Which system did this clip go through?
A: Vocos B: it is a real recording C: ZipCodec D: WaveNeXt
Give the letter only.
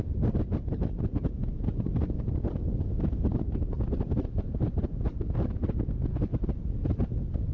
B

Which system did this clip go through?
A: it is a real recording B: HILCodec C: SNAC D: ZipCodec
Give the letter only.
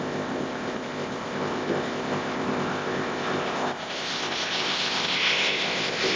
D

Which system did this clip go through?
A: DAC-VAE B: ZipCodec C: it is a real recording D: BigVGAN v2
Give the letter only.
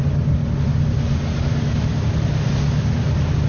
C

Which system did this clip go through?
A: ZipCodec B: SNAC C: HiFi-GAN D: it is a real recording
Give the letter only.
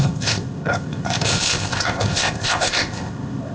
A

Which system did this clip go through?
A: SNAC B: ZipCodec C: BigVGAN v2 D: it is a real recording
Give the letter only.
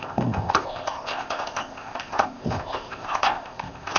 B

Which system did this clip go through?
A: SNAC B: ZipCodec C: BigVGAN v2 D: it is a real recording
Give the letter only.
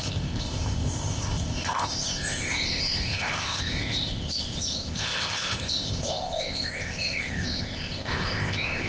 B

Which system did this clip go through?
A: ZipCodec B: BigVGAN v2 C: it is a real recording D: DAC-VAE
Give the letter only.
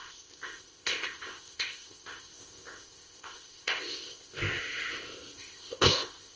A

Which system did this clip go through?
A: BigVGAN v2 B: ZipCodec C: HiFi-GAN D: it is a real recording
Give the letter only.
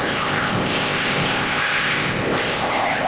B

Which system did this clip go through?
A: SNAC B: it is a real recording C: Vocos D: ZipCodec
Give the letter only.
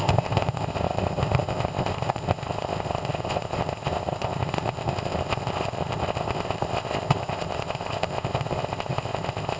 D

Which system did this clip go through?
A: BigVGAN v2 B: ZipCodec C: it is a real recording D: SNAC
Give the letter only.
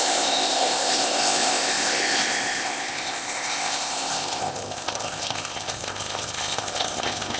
B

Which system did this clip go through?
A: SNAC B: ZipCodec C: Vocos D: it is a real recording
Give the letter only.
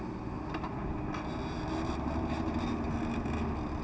D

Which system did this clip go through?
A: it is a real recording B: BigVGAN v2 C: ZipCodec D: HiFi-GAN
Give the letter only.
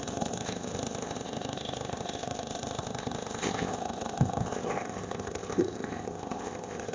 C